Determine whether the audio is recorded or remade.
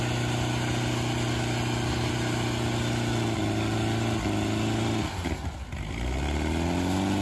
recorded